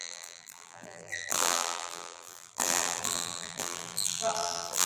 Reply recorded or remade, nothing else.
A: remade